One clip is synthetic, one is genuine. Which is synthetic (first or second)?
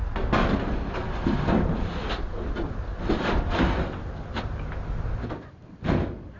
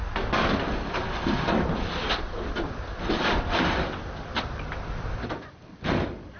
second